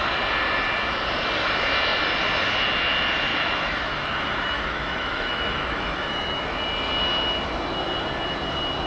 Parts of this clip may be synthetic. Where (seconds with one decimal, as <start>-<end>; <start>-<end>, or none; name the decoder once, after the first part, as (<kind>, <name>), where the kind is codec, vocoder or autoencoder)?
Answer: 3.3-6.6 (autoencoder, DAC-VAE)